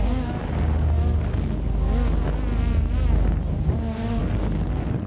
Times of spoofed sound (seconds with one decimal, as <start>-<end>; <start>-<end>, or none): 0.0-0.4; 3.5-4.2